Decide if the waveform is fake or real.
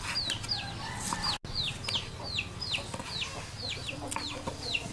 real